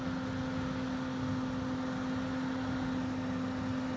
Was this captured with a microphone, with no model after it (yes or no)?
yes